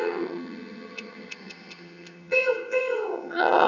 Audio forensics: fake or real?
fake